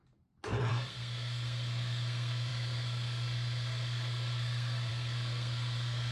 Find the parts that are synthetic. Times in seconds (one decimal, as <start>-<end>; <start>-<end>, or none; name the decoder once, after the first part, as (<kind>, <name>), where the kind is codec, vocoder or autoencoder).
0.7-6.1 (codec, SNAC)